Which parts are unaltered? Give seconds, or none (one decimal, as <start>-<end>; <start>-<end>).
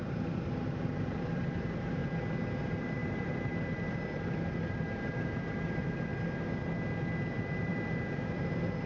2.0-2.6; 6.1-7.3